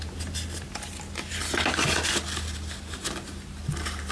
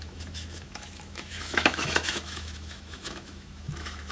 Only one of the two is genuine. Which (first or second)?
first